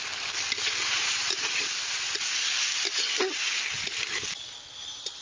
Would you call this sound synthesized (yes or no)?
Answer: no